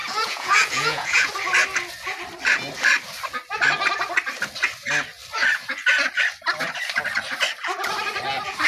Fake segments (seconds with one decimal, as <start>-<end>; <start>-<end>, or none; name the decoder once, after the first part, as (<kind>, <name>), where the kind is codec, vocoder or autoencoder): 0.0-1.3 (vocoder, Vocos)